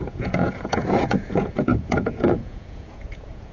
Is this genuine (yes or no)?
no